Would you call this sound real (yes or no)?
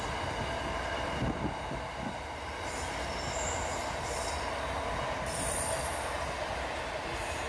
yes